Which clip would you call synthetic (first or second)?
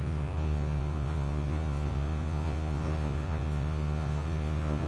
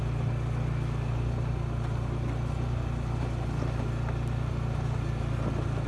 first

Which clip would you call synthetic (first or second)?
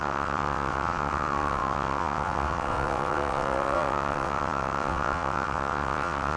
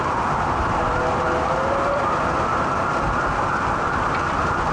first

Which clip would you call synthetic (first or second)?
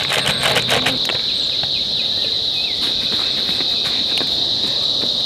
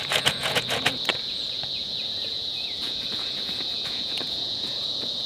second